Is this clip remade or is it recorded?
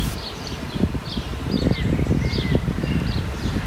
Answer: recorded